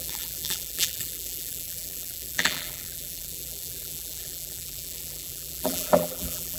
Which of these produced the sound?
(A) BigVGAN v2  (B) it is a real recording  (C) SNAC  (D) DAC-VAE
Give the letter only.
A